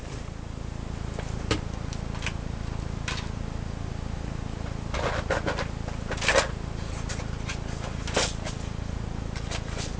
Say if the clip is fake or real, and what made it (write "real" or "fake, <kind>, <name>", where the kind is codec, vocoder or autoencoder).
real